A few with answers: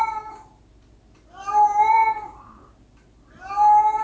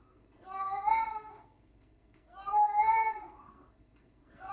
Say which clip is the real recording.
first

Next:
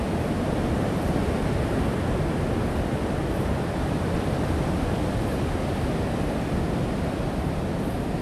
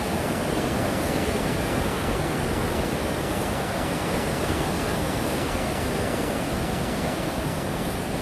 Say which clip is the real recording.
first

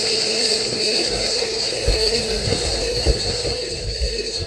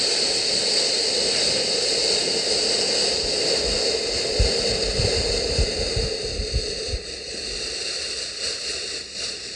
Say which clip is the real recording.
second